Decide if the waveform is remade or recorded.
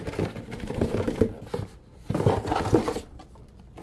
recorded